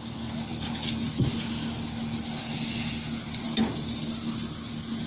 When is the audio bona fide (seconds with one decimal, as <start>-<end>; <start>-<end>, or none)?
0.0-5.1